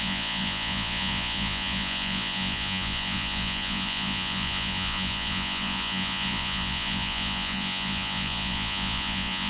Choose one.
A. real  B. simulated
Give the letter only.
B